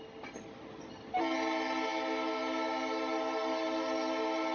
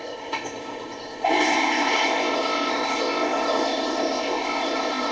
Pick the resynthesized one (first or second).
second